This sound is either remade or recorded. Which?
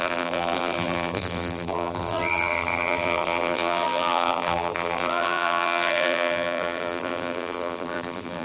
remade